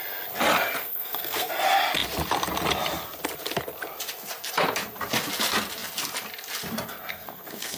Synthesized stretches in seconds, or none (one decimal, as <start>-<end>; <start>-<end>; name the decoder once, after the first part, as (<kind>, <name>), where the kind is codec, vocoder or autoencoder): 0.8-1.5 (codec, SNAC); 7.1-7.8